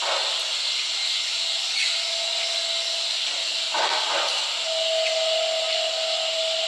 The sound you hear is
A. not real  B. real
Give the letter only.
B